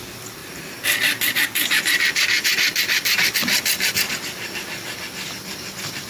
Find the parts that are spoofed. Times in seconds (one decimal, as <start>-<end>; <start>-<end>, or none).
none

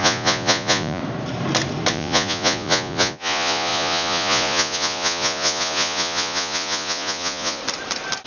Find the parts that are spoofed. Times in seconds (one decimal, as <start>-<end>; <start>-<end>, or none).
0.0-1.0; 1.9-7.6

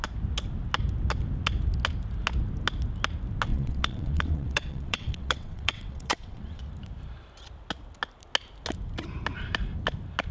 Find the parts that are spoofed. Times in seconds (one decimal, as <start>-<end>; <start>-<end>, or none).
3.5-6.6

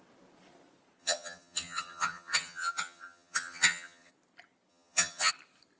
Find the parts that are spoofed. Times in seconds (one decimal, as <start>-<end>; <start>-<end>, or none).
1.0-4.1; 4.7-5.3

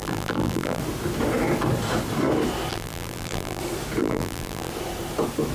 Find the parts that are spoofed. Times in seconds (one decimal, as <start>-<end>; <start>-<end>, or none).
0.0-0.8; 2.7-3.6; 4.0-4.7

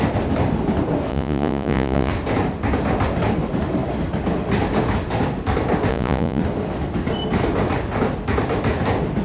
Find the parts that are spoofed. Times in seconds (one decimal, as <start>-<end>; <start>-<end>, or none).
1.1-2.1; 5.9-6.4